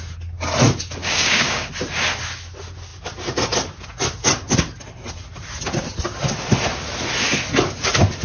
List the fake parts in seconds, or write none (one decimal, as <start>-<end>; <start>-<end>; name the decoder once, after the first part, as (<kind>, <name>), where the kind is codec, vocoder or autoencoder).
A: 1.0-1.7 (codec, DAC)